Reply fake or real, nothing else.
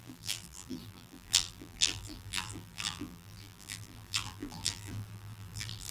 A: fake